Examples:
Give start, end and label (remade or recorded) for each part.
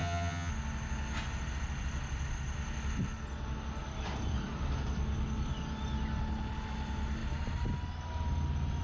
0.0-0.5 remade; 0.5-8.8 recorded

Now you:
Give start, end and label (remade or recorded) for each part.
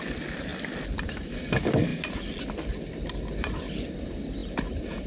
0.0-5.1 recorded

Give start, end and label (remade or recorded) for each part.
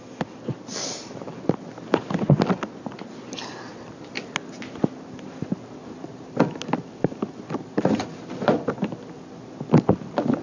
0.0-10.4 recorded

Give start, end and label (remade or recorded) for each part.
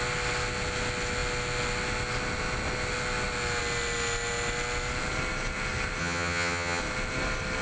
0.0-6.0 recorded; 6.0-6.8 remade; 6.8-7.6 recorded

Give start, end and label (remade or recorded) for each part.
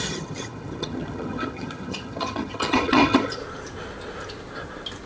0.0-3.4 remade; 3.4-5.1 recorded